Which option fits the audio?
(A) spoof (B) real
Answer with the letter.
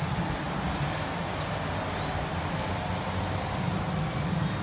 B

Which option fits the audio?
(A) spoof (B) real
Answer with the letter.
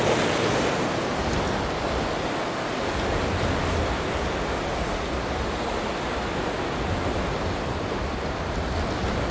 B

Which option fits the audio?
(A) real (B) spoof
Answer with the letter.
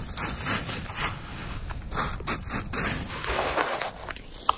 A